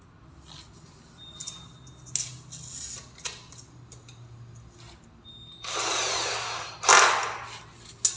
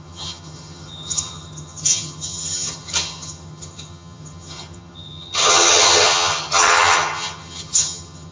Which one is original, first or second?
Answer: first